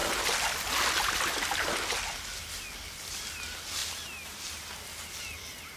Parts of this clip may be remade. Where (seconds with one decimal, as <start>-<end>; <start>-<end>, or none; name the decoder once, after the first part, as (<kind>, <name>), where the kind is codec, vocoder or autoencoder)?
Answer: none